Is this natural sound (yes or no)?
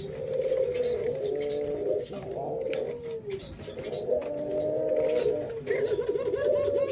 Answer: yes